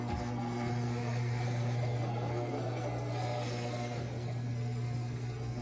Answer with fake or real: fake